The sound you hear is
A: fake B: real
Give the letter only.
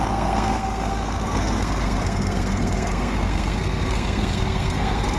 A